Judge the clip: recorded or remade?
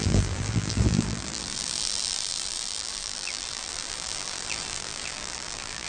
remade